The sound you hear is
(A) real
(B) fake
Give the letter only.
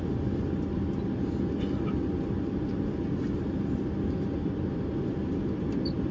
A